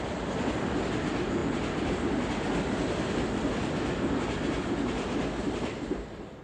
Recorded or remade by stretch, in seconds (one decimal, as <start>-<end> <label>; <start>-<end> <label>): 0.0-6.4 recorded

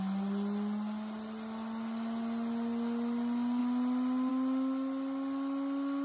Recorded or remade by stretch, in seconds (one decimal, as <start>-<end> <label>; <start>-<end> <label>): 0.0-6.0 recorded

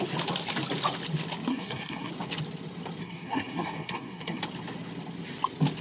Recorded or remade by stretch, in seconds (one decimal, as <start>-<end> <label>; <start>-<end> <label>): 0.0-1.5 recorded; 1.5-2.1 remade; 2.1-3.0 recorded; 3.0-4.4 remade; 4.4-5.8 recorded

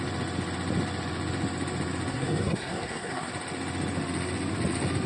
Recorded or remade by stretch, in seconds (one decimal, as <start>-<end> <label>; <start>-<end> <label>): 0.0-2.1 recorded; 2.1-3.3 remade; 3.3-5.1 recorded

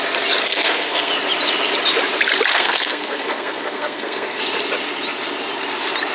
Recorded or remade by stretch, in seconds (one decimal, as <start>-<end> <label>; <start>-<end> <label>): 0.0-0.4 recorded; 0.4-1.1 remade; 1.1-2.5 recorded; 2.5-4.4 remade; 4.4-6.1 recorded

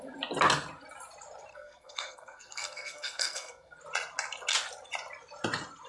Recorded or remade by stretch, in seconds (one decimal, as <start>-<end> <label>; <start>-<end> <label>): 0.0-1.5 recorded; 1.5-3.8 remade; 3.8-5.9 recorded

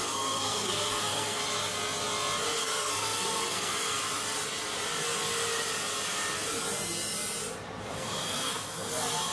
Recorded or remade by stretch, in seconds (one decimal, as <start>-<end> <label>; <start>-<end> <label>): 0.0-1.4 remade; 1.4-2.6 recorded; 2.6-4.0 remade; 4.0-7.9 recorded; 7.9-8.9 remade; 8.9-9.3 recorded

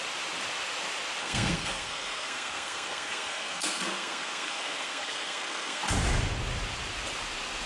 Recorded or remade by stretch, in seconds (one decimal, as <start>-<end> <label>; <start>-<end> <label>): 0.0-1.2 recorded; 1.2-5.8 remade; 5.8-7.7 recorded